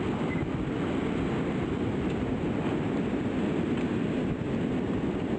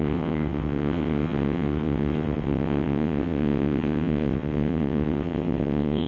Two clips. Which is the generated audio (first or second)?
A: second